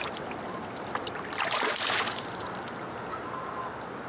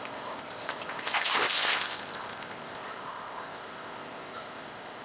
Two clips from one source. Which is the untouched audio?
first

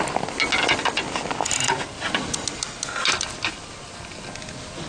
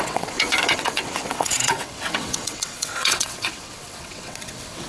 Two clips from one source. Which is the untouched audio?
first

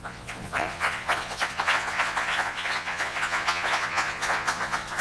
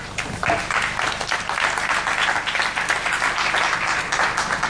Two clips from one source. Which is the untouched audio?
second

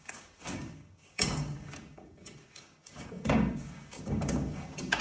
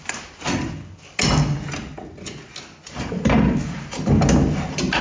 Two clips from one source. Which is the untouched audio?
second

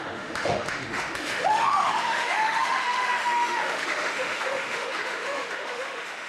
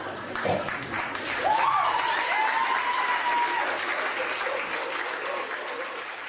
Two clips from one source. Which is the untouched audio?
second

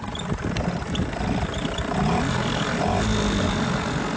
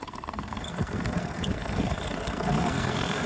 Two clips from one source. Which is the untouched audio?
first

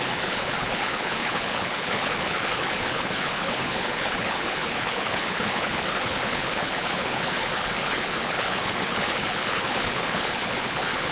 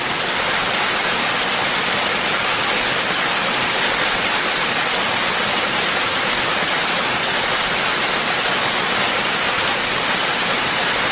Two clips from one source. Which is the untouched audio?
second